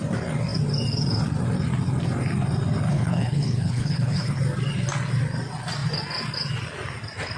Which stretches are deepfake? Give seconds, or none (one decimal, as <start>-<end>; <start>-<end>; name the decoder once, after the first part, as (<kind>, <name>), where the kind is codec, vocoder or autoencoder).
2.9-4.4 (codec, HILCodec)